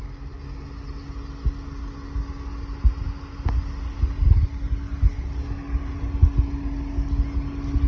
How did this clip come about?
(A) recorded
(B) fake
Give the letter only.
A